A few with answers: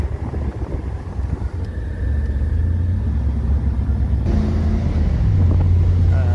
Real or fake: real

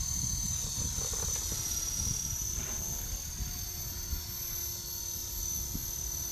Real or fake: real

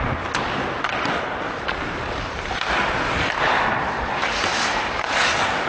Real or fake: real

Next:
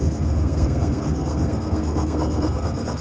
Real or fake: fake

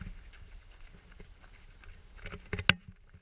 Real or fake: real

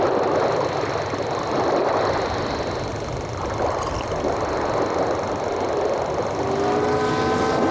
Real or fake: real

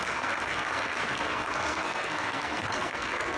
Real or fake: fake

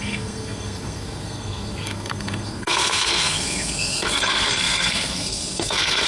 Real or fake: fake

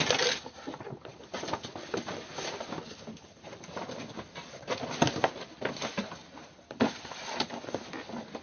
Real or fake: real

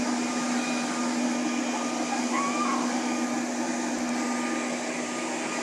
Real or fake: real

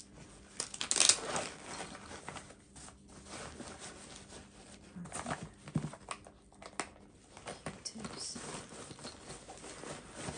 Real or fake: real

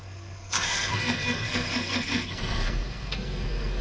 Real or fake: fake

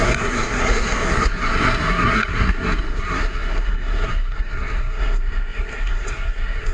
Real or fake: fake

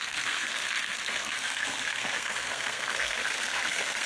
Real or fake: fake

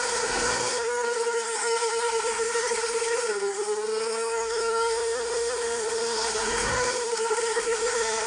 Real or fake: fake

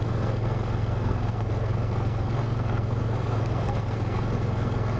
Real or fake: fake